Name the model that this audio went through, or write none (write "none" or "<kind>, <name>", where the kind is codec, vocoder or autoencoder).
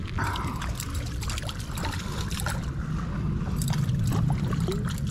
none